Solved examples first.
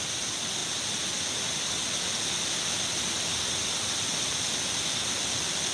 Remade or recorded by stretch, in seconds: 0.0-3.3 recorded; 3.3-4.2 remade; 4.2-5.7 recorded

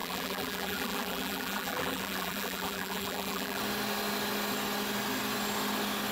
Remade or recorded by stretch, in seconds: 0.0-3.6 remade; 3.6-6.1 recorded